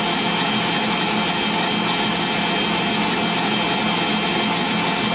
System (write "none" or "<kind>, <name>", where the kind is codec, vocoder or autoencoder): none